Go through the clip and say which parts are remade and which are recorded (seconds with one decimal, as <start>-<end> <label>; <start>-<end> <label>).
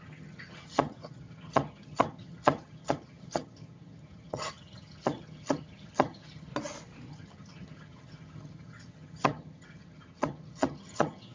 0.0-6.5 remade; 6.5-7.1 recorded; 7.1-11.3 remade